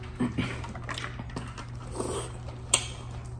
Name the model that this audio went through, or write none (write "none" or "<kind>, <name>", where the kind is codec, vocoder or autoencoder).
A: none